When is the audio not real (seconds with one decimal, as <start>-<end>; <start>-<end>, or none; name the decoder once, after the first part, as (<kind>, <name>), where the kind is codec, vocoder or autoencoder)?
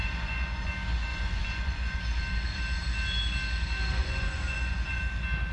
0.0-0.7 (vocoder, Vocos); 1.1-2.0; 4.0-5.0